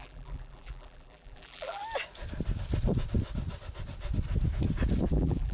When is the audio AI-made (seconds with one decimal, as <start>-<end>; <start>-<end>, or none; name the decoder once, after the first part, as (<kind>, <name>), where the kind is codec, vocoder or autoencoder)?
0.0-1.8 (vocoder, BigVGAN v2); 5.1-5.5